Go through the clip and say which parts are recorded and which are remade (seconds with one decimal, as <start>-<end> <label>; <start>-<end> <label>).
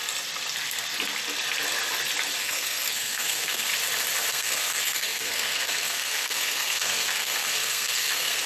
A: 0.0-2.4 recorded; 2.4-3.7 remade; 3.7-4.3 recorded; 4.3-8.5 remade